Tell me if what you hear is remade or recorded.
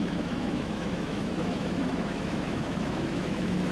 remade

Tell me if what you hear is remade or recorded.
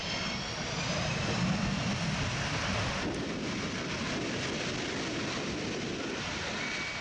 recorded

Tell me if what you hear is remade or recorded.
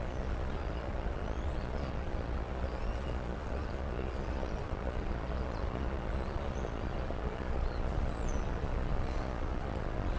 remade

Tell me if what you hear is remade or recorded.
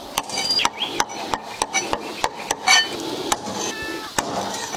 recorded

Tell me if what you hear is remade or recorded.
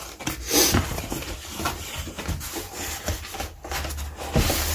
recorded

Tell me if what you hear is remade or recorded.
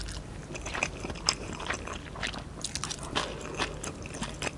recorded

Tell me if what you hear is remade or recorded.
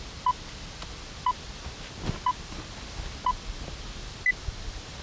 recorded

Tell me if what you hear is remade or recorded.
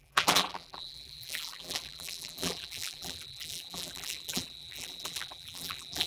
remade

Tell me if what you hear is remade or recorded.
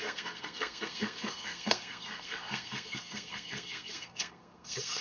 remade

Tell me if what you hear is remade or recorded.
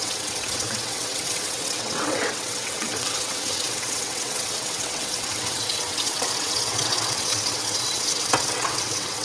remade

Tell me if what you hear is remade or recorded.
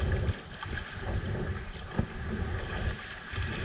recorded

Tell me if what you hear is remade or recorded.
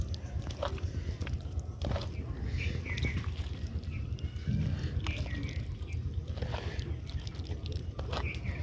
recorded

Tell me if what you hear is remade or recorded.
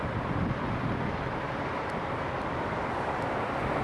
remade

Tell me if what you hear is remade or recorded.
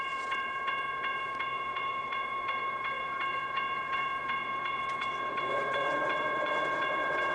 remade